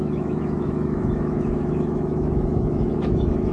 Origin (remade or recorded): remade